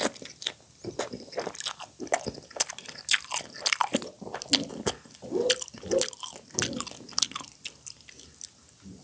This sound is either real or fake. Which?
real